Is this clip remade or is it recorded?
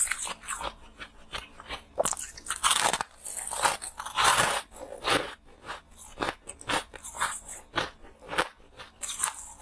recorded